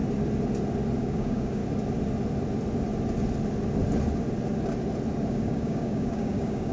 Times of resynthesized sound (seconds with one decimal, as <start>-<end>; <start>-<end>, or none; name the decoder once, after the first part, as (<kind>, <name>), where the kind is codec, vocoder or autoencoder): 1.0-1.6 (codec, DAC); 5.3-6.7